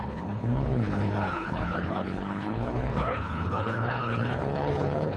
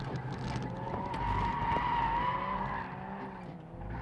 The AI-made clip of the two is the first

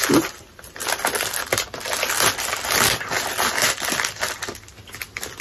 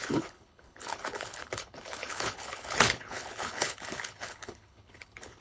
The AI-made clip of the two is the second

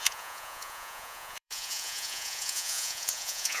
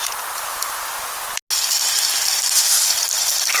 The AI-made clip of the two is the first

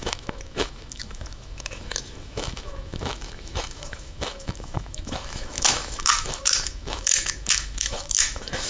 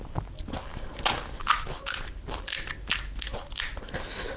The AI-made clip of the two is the first